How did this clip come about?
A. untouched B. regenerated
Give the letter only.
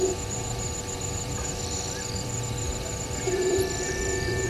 B